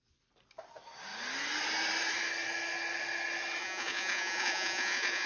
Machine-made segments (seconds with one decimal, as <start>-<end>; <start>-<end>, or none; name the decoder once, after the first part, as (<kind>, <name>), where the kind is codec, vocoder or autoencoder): 3.6-5.3 (vocoder, Vocos)